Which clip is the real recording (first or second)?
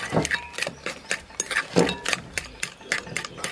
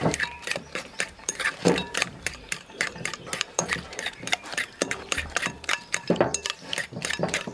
first